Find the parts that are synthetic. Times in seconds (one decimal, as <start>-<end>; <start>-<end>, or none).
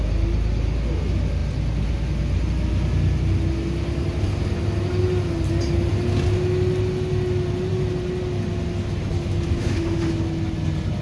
9.6-10.1